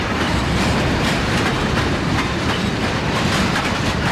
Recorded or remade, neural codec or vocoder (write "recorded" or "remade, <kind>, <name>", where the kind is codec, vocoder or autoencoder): recorded